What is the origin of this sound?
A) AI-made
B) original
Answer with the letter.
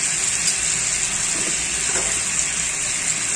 B